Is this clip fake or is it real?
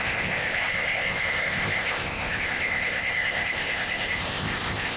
fake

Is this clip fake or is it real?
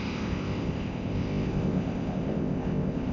fake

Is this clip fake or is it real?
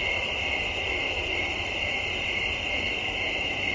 real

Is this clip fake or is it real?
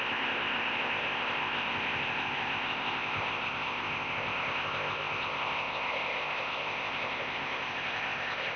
fake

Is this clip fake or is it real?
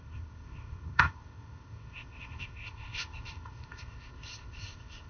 fake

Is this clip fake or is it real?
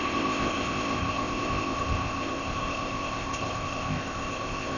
fake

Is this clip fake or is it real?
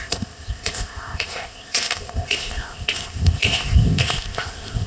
fake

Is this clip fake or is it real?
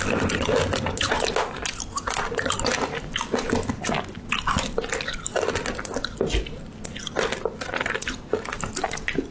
real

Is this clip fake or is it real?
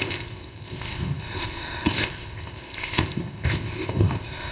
fake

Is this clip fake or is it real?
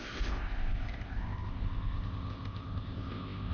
fake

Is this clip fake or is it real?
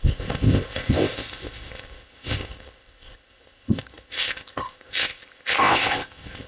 fake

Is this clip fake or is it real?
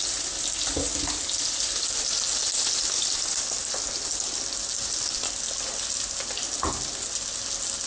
real